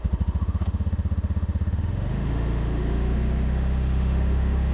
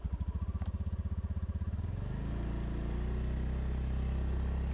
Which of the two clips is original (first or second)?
second